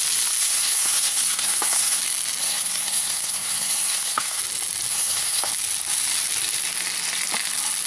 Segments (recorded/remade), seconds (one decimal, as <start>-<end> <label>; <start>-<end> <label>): 0.0-0.4 recorded; 0.4-2.0 remade; 2.0-2.4 recorded; 2.4-4.4 remade; 4.4-4.9 recorded; 4.9-5.5 remade; 5.5-7.9 recorded